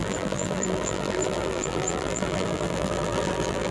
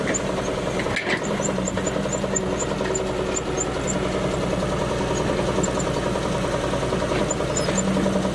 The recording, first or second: second